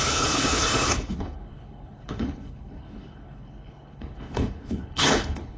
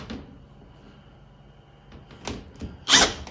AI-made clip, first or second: first